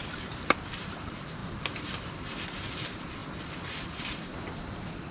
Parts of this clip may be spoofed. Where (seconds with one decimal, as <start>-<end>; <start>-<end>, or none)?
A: 0.0-3.2; 3.9-5.1